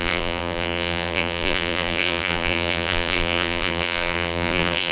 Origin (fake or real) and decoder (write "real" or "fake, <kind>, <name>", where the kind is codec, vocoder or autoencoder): fake, vocoder, BigVGAN v2